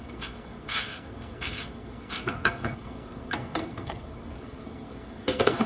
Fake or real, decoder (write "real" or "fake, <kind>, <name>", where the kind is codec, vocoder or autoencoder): fake, codec, SNAC